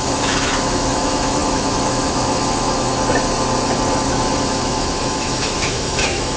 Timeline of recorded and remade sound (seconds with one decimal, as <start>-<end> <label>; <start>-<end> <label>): 0.0-2.9 remade; 2.9-4.1 recorded; 4.1-6.4 remade